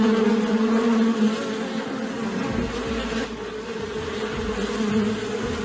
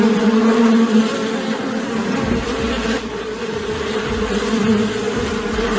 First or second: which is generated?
second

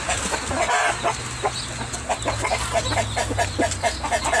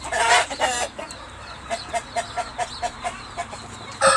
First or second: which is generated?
second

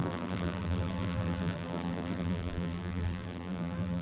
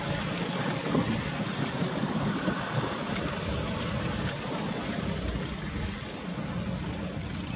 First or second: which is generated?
first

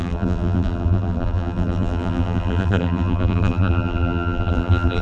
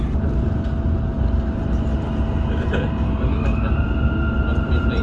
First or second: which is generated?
first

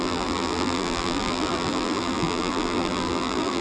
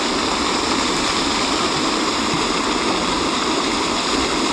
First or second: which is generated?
first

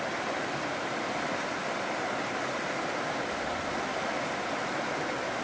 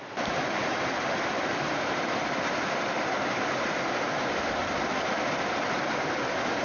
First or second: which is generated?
second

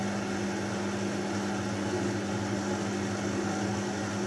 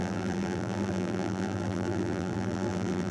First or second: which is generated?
second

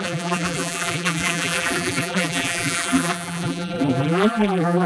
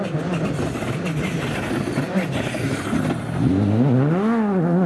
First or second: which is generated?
first